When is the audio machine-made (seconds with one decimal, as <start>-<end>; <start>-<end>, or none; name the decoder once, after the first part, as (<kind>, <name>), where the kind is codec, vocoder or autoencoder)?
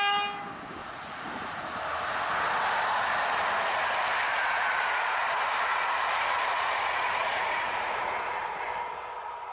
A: 0.8-1.7 (vocoder, Vocos); 4.3-5.2; 5.7-8.6